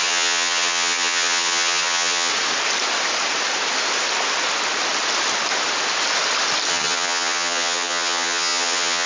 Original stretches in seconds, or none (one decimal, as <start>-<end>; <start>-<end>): 2.3-6.7